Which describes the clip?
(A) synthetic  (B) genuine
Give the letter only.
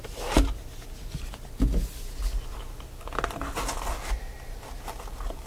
B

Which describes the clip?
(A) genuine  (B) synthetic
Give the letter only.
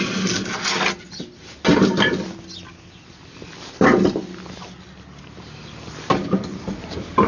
A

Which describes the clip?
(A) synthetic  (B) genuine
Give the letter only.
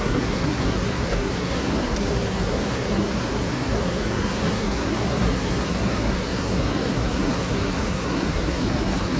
A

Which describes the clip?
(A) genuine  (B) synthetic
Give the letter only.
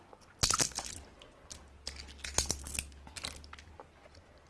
A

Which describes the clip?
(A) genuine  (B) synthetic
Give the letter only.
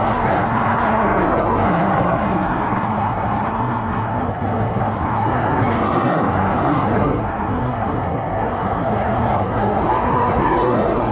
B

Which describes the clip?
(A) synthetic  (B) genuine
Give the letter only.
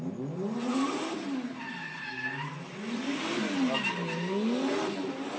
B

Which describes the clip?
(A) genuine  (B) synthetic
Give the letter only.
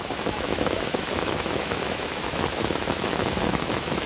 B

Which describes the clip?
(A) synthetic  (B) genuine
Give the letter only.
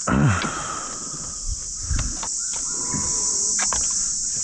B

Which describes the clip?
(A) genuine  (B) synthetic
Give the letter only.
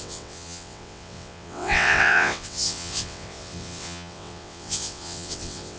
B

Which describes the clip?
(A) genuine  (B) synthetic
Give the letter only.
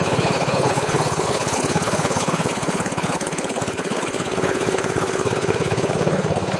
B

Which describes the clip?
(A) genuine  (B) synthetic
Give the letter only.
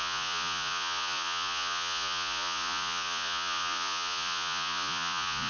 B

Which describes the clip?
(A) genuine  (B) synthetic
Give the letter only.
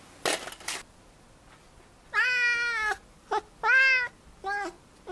A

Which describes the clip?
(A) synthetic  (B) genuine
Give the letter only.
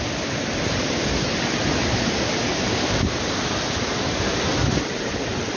B